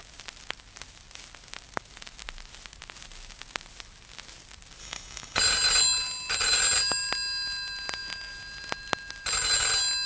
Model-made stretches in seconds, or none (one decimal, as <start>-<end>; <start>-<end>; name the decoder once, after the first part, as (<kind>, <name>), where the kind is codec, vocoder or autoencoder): 4.8-5.4 (autoencoder, DAC-VAE)